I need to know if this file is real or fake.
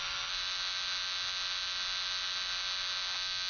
real